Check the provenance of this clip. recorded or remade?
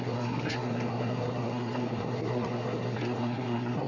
remade